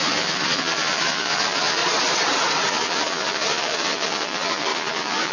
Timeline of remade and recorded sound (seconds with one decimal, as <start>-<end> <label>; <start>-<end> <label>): 0.0-1.8 remade; 1.8-2.7 recorded; 2.7-5.3 remade